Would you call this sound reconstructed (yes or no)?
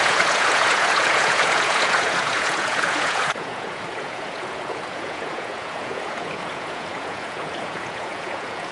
yes